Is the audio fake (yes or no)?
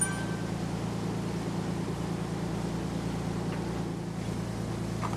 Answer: no